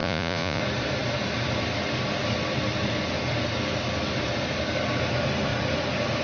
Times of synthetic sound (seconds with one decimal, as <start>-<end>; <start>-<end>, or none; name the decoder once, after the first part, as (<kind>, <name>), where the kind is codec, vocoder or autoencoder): 0.0-0.6 (vocoder, Vocos)